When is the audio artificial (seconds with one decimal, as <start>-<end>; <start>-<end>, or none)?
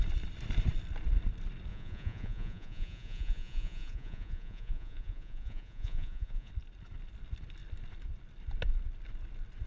1.7-6.5